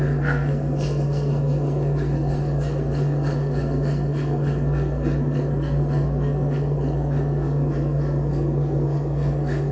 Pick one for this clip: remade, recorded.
remade